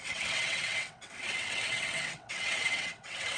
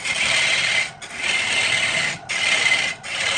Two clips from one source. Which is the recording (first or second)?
second